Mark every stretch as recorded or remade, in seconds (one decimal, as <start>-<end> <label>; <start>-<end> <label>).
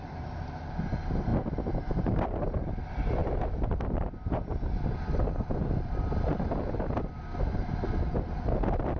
0.0-9.0 recorded